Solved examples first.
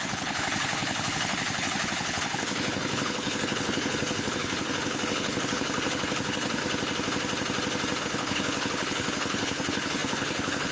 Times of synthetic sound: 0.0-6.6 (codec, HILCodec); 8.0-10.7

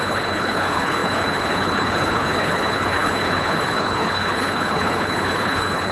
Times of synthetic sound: 0.0-5.9 (codec, HILCodec)

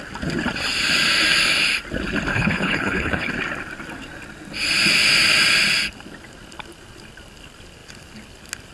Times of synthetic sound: 2.3-3.3 (codec, HILCodec)

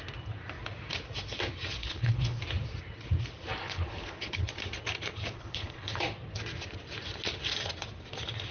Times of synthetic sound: 1.8-2.4 (codec, HILCodec); 3.6-4.5; 5.4-6.0

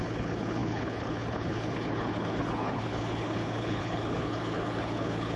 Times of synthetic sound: 0.0-5.4 (codec, HILCodec)

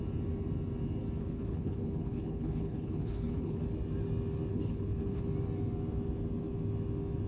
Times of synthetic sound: 1.2-3.6 (codec, HILCodec); 4.5-5.2

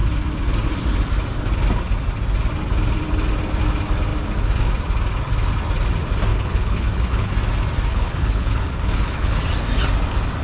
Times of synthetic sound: 6.3-7.3 (codec, HILCodec); 7.9-9.4